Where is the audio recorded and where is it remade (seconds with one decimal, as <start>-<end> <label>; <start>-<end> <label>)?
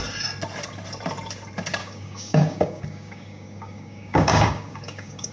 0.0-1.8 recorded; 1.8-5.3 remade